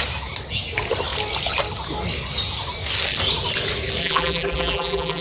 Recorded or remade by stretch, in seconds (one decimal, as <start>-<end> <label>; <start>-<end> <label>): 0.0-4.0 recorded; 4.0-5.2 remade